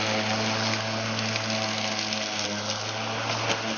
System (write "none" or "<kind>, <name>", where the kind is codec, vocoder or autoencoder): none